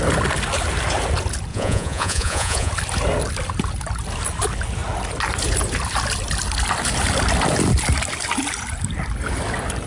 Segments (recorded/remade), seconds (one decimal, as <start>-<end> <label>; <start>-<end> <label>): 0.0-1.5 recorded; 1.5-2.7 remade; 2.7-9.9 recorded